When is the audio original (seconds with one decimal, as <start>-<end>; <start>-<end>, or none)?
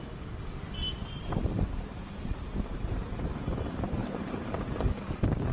0.0-0.8; 3.2-4.0; 4.9-5.5